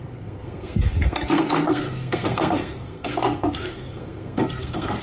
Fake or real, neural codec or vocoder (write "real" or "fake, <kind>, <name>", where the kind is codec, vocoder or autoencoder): fake, codec, SNAC